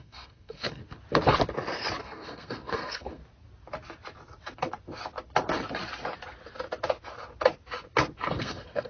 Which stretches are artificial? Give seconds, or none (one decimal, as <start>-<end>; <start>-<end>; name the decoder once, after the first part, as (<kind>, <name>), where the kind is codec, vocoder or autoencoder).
0.0-0.8 (codec, SNAC); 2.0-3.2; 8.4-8.9